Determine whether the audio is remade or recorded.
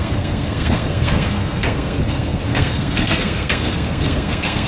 remade